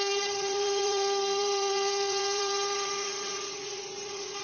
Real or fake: fake